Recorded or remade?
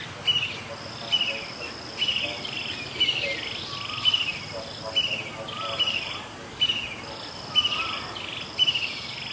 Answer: recorded